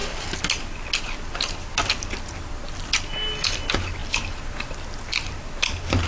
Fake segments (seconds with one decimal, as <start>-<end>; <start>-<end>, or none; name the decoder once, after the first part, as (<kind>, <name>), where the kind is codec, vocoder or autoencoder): none